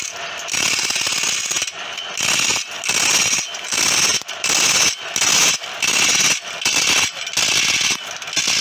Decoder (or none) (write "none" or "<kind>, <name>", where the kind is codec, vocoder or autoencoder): none